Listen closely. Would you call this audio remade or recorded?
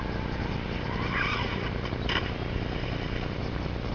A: remade